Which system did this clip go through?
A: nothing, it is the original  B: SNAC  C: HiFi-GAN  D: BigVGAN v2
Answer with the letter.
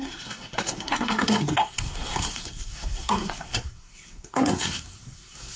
B